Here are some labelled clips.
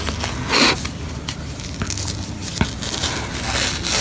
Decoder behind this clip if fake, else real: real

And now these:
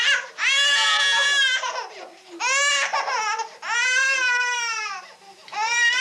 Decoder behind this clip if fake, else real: real